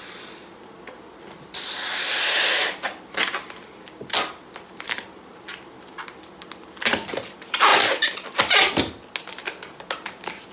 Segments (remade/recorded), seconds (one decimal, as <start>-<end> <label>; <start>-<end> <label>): 0.0-10.5 recorded